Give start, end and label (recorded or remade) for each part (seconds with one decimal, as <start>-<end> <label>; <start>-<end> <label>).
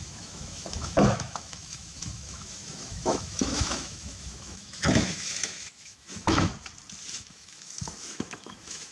0.0-6.5 remade; 6.5-7.1 recorded; 7.1-8.9 remade